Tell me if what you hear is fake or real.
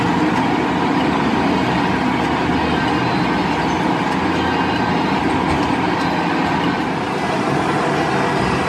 real